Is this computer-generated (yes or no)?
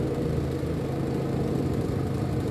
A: no